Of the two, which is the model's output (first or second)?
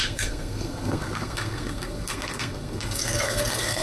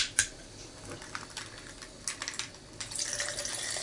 first